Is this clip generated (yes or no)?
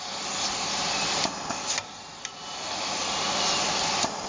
no